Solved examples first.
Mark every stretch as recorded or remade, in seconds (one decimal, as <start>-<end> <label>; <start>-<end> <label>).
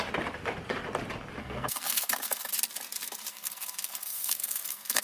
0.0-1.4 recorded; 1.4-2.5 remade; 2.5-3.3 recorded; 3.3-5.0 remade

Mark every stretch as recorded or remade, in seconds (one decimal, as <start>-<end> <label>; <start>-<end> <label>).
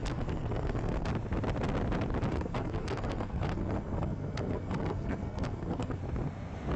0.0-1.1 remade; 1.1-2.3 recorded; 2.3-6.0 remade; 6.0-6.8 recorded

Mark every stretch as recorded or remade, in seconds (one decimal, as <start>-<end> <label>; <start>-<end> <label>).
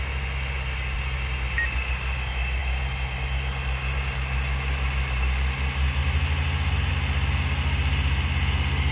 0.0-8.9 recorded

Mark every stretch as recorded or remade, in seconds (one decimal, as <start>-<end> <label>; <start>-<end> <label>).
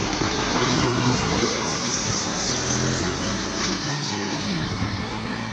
0.0-2.5 remade; 2.5-3.0 recorded; 3.0-5.5 remade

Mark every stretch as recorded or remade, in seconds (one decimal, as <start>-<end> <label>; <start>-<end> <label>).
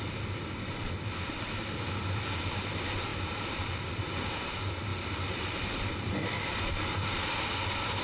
0.0-3.1 recorded; 3.1-3.8 remade; 3.8-4.9 recorded; 4.9-6.6 remade; 6.6-8.0 recorded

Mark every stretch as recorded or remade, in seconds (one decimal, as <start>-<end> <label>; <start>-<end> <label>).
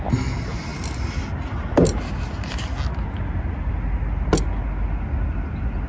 0.0-5.9 recorded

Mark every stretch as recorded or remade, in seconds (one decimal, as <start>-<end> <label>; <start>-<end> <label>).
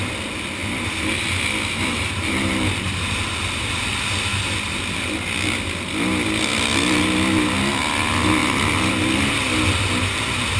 0.0-0.6 recorded; 0.6-3.8 remade; 3.8-10.6 recorded